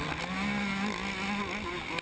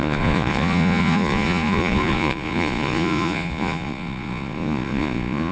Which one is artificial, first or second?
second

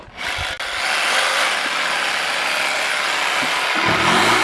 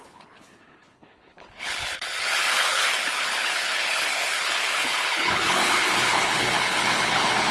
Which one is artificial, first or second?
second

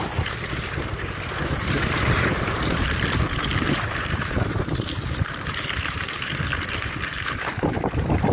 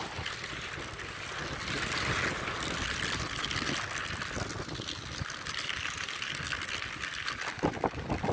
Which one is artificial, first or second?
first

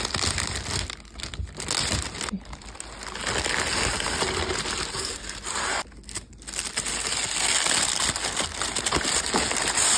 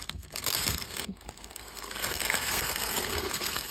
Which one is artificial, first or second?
second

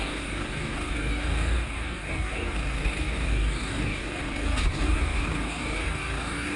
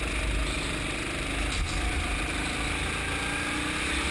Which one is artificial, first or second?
first